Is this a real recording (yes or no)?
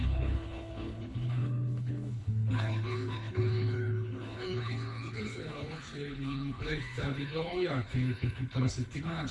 no